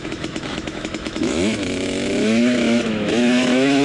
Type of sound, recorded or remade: remade